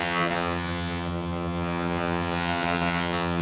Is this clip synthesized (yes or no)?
yes